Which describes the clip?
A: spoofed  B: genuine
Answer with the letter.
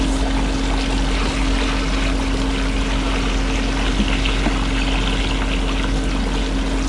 B